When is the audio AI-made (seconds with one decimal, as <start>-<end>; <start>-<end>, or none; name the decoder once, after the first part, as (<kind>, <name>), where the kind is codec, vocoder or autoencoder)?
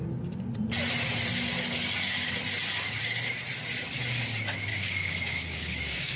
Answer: 4.7-6.2 (codec, DAC)